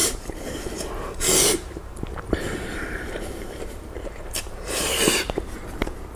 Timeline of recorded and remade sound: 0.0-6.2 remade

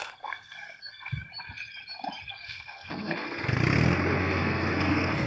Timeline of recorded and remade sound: 0.0-1.3 remade; 1.3-2.3 recorded; 2.3-3.6 remade; 3.6-4.2 recorded; 4.2-5.3 remade

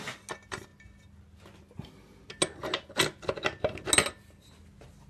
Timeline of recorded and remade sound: 0.0-5.1 recorded

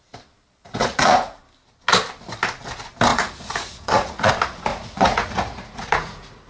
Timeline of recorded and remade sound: 0.0-0.6 recorded; 0.6-1.4 remade; 1.4-3.1 recorded; 3.1-4.3 remade; 4.3-4.7 recorded; 4.7-6.5 remade